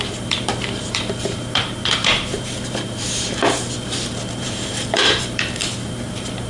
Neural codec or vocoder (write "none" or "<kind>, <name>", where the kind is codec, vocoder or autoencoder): vocoder, BigVGAN v2